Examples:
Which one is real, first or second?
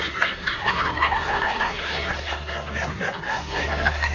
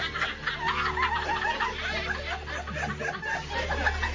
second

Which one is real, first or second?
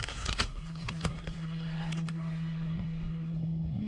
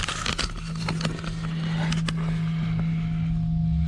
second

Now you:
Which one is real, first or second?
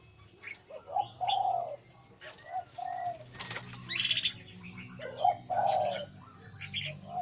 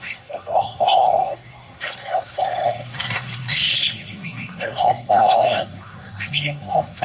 first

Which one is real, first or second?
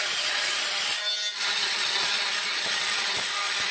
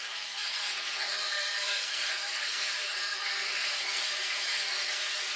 first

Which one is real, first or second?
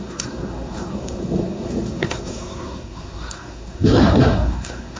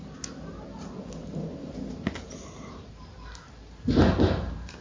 second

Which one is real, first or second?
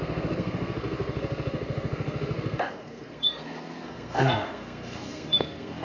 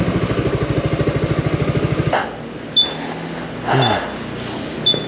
second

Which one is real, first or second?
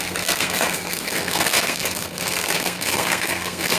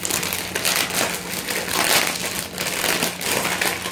second